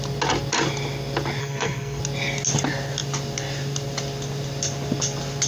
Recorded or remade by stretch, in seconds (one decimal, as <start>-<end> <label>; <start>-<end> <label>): 0.0-1.4 recorded; 1.4-2.0 remade; 2.0-5.5 recorded